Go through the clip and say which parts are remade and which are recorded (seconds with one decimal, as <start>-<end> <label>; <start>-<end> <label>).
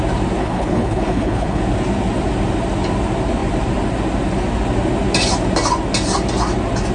0.0-0.4 recorded; 0.4-1.6 remade; 1.6-6.9 recorded